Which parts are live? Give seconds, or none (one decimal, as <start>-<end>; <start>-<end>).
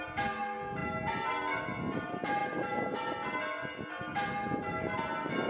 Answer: 0.0-5.5